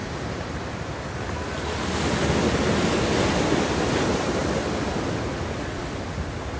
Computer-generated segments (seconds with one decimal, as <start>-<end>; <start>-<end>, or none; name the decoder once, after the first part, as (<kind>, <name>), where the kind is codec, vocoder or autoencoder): 0.0-0.5 (vocoder, BigVGAN v2)